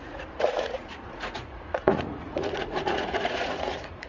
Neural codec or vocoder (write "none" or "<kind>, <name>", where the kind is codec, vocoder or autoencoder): vocoder, Vocos